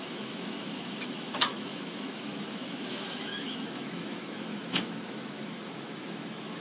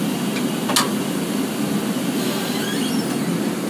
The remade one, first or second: first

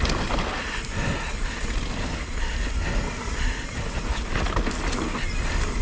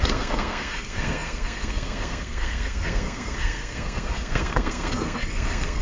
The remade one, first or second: second